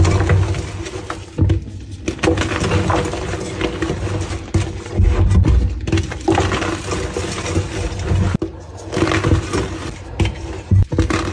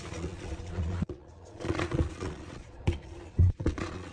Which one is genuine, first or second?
first